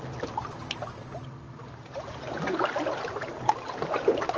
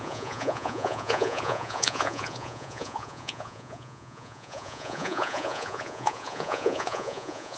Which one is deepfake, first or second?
second